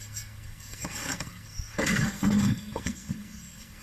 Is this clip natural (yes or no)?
no